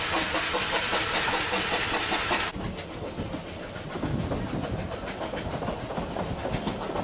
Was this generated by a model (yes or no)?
no